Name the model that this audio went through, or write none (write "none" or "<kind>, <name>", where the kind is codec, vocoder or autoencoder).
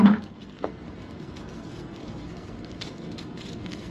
codec, SNAC